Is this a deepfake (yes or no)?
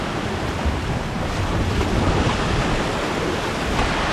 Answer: no